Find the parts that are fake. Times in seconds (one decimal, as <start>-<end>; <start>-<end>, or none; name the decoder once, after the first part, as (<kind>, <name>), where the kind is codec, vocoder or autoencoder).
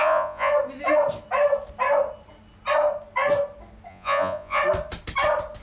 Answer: 0.0-0.5 (vocoder, Vocos); 3.9-4.6